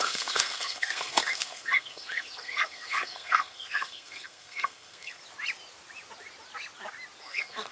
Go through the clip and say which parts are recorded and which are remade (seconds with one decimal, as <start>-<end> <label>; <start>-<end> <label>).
0.0-5.2 remade; 5.2-7.2 recorded; 7.2-7.7 remade

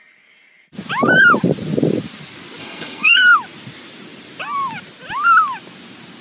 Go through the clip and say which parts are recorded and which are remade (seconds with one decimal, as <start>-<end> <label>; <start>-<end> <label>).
0.0-2.6 recorded; 2.6-3.1 remade; 3.1-6.2 recorded